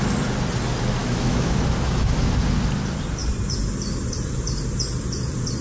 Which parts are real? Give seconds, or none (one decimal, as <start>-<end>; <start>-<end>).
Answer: 0.0-1.0; 1.6-5.6